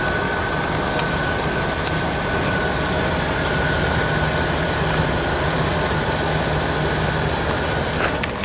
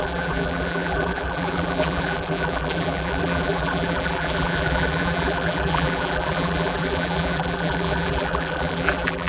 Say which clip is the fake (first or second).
second